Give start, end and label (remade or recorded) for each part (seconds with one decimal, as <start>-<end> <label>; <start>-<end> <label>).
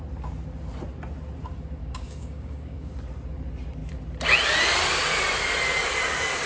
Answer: 0.0-1.8 recorded; 1.8-2.9 remade; 2.9-6.5 recorded